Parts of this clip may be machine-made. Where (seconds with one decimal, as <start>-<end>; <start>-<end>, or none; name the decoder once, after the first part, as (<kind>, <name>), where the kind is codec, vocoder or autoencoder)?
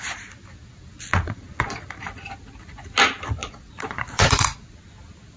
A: 0.5-1.9 (vocoder, Vocos); 3.4-4.7